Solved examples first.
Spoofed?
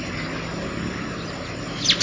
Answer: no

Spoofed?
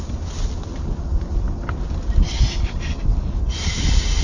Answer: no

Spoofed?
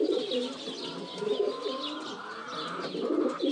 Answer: no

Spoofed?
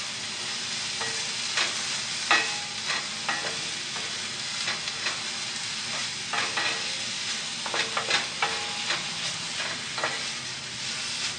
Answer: no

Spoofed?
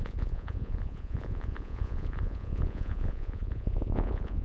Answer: yes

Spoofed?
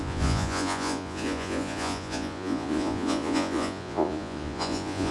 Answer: yes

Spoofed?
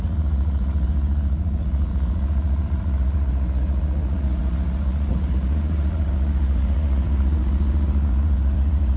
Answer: yes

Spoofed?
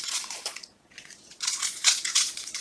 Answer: yes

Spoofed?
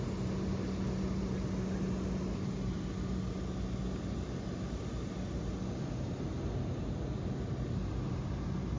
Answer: no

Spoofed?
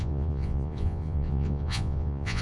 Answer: yes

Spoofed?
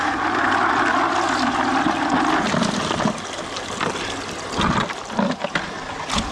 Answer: no